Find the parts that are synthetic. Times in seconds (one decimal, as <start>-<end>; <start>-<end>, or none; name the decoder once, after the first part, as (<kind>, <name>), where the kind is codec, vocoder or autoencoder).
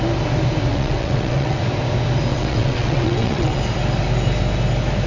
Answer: 0.7-1.6 (vocoder, WaveNeXt); 2.3-3.6